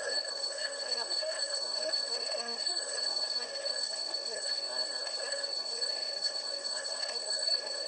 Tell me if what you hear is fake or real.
fake